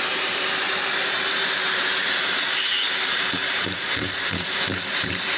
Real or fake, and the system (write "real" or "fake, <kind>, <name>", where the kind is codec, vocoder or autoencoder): fake, vocoder, BigVGAN v2